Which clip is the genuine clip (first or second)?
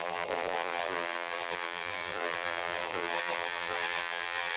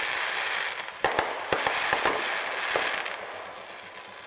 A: second